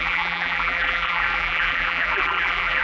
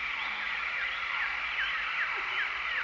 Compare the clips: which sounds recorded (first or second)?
second